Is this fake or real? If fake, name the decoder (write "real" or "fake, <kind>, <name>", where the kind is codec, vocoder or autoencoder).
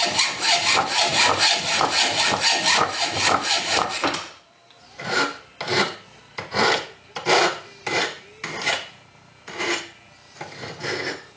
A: real